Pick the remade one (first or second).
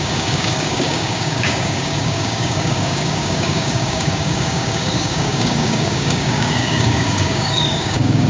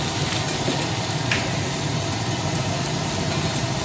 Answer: first